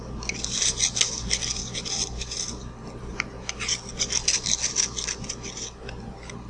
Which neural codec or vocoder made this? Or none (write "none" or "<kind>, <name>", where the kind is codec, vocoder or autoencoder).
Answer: none